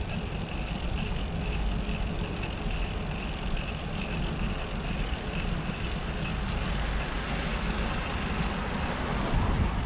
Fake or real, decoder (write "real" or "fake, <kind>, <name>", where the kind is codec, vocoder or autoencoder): real